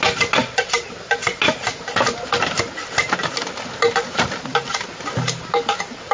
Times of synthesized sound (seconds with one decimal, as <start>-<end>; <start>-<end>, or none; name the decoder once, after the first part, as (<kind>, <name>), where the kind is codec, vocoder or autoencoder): none